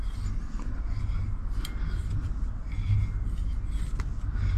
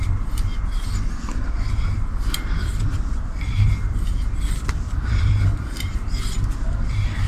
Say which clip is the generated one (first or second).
second